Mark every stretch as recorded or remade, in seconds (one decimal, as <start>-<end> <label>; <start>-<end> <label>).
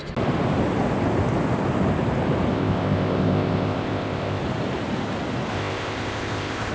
0.0-2.5 recorded; 2.5-4.4 remade; 4.4-5.5 recorded; 5.5-6.7 remade